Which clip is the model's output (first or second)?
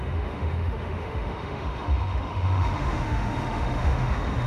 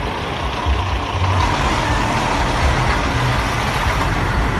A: first